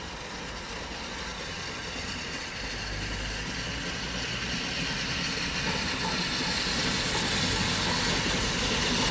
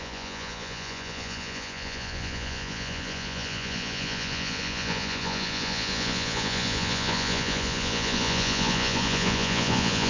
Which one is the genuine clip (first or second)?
first